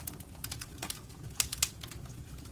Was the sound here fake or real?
fake